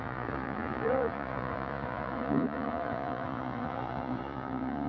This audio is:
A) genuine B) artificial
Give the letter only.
B